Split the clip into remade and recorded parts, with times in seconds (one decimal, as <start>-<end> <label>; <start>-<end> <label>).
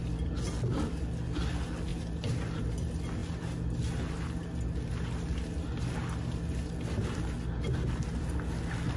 0.0-1.9 recorded; 1.9-2.6 remade; 2.6-9.0 recorded